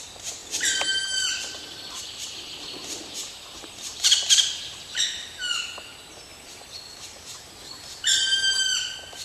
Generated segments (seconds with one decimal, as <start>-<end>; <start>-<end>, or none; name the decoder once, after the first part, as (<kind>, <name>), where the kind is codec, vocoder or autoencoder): 0.4-4.8 (vocoder, BigVGAN v2); 6.3-8.5